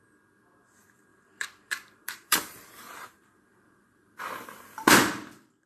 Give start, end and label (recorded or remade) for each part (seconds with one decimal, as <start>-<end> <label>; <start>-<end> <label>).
0.0-1.1 recorded; 1.1-4.2 remade; 4.2-5.7 recorded